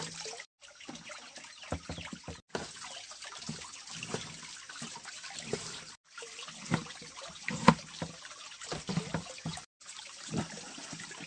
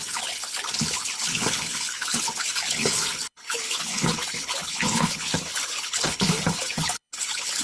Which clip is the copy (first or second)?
second